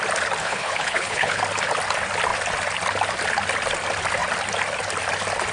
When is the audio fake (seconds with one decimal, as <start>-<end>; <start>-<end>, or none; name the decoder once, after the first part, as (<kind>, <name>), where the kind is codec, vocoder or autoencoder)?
0.4-1.4 (codec, HILCodec)